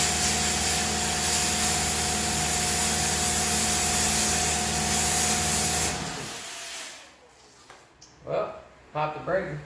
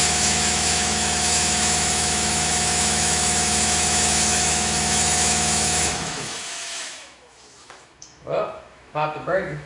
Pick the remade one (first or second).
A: second